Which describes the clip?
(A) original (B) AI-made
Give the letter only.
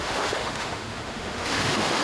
B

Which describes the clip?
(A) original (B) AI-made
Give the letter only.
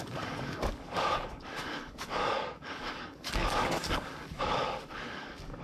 B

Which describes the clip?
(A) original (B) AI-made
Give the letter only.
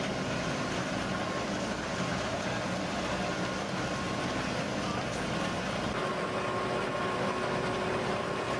A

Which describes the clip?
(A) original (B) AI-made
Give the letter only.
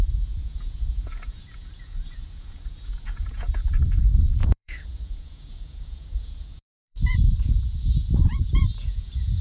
B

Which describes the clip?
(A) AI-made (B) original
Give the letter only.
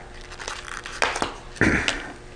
B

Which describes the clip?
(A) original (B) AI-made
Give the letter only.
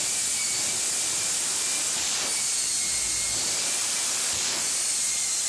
A